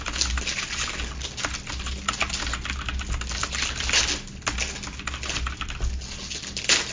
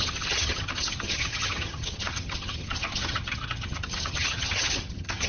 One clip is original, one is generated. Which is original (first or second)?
first